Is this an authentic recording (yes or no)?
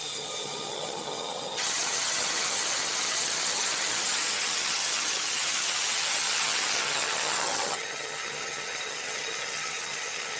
no